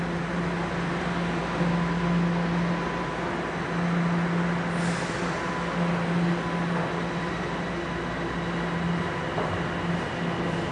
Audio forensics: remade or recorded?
recorded